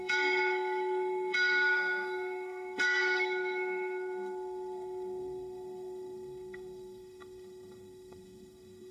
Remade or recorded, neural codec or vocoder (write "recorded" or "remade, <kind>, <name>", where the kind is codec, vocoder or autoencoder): remade, codec, SNAC